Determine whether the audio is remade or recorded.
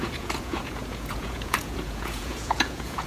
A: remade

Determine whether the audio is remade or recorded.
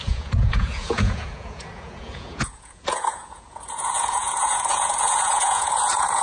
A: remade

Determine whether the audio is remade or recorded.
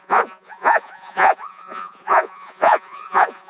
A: remade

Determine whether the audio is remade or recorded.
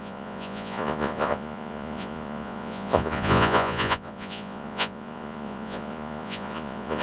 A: remade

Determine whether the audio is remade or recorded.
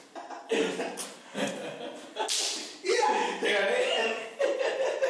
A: recorded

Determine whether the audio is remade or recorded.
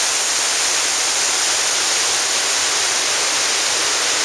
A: recorded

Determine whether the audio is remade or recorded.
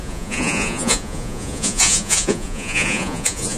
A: remade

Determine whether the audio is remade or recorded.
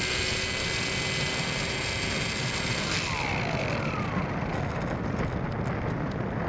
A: recorded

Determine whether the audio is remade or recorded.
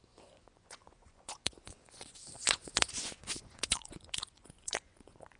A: remade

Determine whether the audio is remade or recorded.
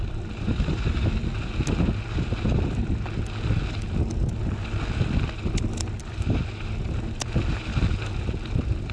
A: recorded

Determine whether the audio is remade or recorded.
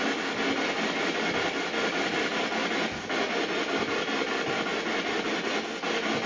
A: recorded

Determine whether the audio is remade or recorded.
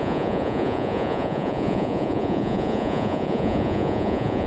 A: remade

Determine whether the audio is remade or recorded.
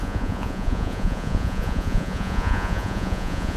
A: remade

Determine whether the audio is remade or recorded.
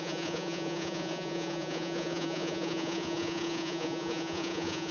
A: remade